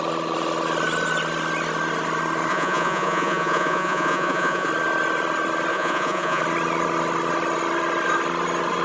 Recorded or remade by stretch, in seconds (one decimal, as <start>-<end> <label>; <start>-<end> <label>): 0.0-2.5 recorded; 2.5-4.7 remade; 4.7-5.7 recorded; 5.7-6.4 remade; 6.4-8.8 recorded